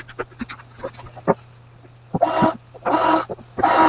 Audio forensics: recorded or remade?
recorded